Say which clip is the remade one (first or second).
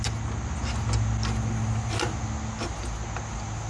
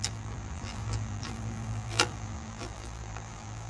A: second